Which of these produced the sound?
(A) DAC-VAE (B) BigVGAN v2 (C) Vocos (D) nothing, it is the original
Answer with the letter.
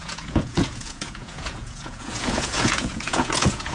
C